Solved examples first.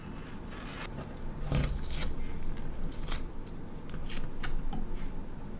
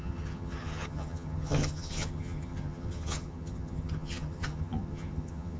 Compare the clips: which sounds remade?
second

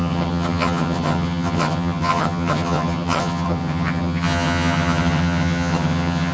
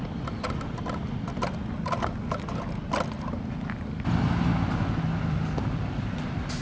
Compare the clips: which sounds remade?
first